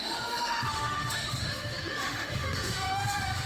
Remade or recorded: remade